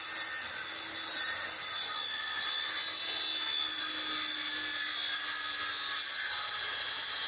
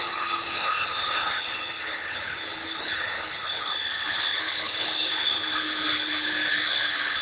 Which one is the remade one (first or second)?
second